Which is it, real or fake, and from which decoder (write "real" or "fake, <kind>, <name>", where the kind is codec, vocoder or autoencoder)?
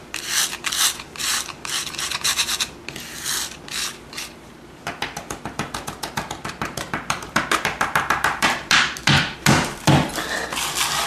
real